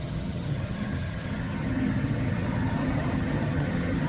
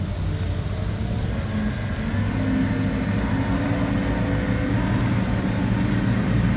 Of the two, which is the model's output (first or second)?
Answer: first